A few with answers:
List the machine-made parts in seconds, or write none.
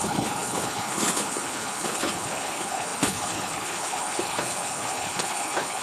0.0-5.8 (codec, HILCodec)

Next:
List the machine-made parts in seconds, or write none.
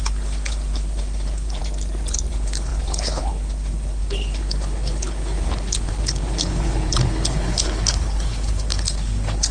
0.0-1.6 (codec, HILCodec); 2.3-9.5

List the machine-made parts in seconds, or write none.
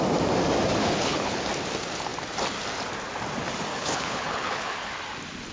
0.8-1.4 (codec, HILCodec); 3.7-4.9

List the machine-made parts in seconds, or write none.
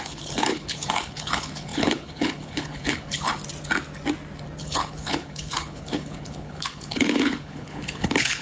0.0-3.3 (codec, HILCodec); 4.6-8.4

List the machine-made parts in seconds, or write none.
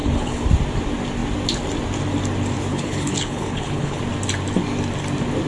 0.0-0.5 (codec, HILCodec); 2.7-4.0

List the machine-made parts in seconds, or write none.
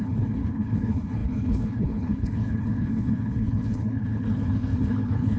0.0-5.4 (codec, HILCodec)